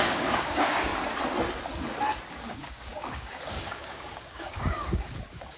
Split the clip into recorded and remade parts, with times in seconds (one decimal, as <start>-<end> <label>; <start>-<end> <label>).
0.0-0.9 remade; 0.9-2.3 recorded; 2.3-5.6 remade